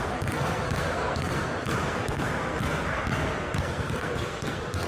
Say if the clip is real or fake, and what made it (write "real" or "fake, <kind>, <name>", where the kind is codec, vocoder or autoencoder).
fake, codec, SNAC